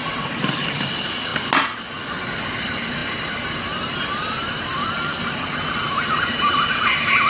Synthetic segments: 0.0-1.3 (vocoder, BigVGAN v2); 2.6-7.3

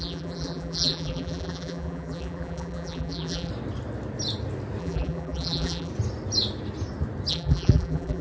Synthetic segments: 0.0-3.5 (vocoder, BigVGAN v2); 4.8-5.9; 7.3-8.2

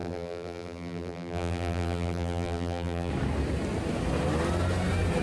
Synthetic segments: 0.0-3.1 (vocoder, BigVGAN v2)

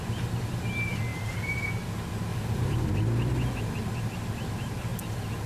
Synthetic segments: 1.1-1.7 (vocoder, BigVGAN v2); 2.3-2.9; 4.9-5.5

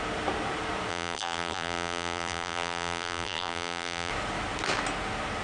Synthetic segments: 0.9-4.1 (vocoder, BigVGAN v2)

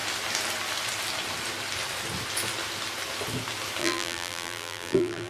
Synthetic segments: 3.8-5.3 (vocoder, BigVGAN v2)